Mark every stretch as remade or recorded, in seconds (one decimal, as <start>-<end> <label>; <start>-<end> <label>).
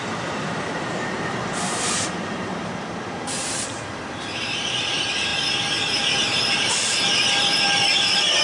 0.0-5.3 remade; 5.3-6.1 recorded; 6.1-8.4 remade